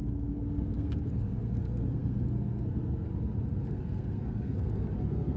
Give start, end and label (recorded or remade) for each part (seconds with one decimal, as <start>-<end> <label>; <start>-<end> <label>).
0.0-3.1 remade; 3.1-3.6 recorded; 3.6-5.4 remade